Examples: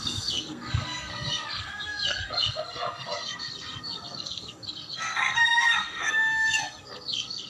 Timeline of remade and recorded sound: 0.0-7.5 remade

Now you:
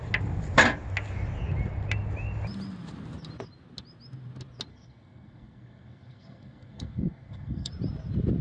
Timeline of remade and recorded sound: 0.0-4.7 recorded; 4.7-7.7 remade; 7.7-8.4 recorded

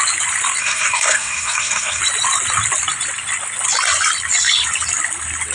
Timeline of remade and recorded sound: 0.0-0.6 recorded; 0.6-2.0 remade; 2.0-5.5 recorded

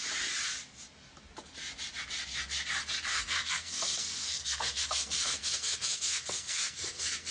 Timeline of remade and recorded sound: 0.0-3.1 recorded; 3.1-7.3 remade